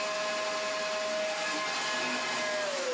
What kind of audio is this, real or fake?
real